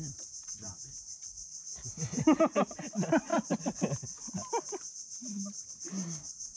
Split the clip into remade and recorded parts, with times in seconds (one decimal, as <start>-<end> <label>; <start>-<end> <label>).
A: 0.0-6.6 recorded